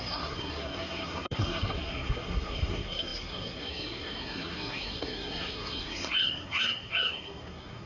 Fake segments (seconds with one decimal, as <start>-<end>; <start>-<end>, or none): 0.0-7.9